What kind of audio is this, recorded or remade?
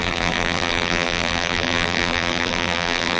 remade